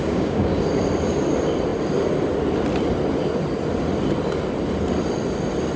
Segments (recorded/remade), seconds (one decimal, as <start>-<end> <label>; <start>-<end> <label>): 0.0-0.6 remade; 0.6-5.8 recorded

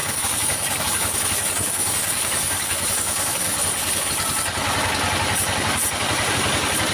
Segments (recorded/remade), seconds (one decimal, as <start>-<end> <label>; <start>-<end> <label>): 0.0-4.1 remade; 4.1-6.9 recorded